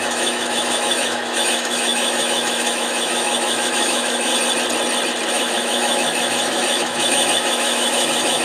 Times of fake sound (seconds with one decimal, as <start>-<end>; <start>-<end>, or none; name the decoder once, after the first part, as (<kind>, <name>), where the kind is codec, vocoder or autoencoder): 0.0-4.3 (autoencoder, DAC-VAE); 5.3-8.4